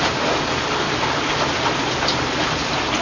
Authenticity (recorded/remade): recorded